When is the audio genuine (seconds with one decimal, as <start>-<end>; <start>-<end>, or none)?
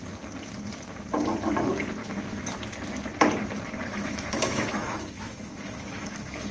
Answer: 0.0-2.0; 2.6-3.9